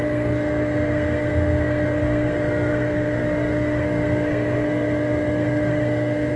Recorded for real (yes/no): no